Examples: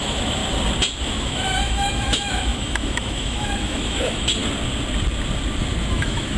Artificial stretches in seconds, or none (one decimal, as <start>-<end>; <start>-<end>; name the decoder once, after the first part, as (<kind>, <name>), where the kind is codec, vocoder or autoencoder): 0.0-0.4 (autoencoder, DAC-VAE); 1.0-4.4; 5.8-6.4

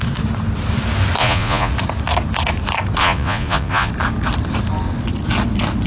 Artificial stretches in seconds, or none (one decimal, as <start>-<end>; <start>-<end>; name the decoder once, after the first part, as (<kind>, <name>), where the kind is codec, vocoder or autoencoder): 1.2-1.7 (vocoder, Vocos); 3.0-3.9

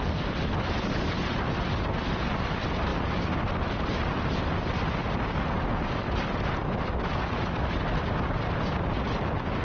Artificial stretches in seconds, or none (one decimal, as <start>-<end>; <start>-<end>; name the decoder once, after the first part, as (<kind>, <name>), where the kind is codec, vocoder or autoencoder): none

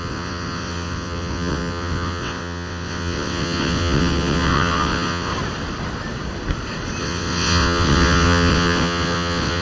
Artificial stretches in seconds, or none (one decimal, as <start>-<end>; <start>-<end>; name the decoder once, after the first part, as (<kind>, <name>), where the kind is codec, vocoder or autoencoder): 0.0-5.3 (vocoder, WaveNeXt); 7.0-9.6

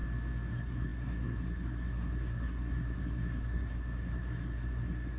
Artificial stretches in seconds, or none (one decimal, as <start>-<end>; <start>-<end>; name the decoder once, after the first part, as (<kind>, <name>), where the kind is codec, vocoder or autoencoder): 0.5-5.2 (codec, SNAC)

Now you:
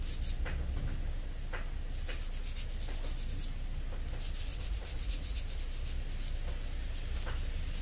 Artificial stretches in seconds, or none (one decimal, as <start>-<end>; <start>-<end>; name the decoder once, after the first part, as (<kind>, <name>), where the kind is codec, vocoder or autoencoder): 4.5-5.4 (vocoder, Vocos)